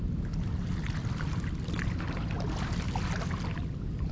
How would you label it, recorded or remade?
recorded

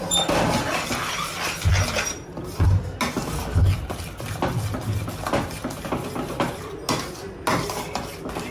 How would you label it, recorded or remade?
recorded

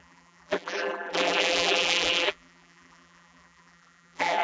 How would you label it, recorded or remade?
remade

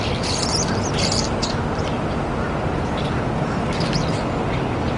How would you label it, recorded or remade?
recorded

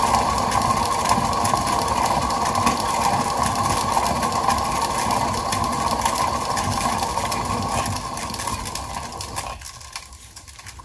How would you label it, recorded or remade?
recorded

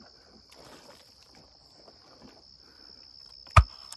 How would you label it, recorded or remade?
recorded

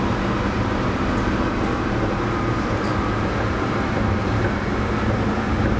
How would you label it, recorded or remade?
remade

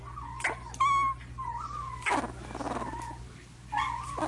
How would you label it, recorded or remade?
recorded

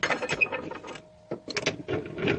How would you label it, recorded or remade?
recorded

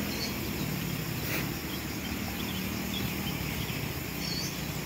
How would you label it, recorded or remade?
recorded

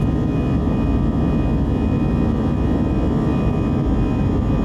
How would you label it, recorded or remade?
recorded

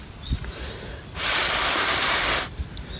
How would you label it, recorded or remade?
recorded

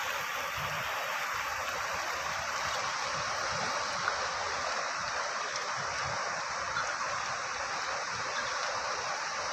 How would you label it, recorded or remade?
recorded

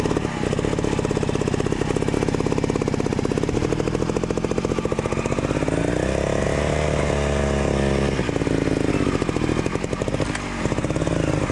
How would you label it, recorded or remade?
recorded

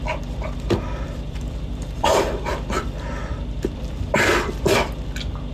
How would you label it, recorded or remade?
remade